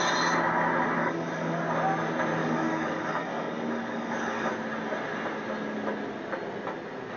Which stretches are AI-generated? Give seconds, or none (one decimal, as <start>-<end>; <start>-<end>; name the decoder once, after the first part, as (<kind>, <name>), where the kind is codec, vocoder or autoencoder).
1.0-1.6 (codec, DAC); 2.4-4.5